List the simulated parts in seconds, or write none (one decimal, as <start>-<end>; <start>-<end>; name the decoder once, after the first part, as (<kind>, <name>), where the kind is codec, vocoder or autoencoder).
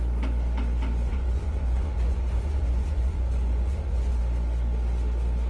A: 1.1-4.2 (vocoder, Vocos)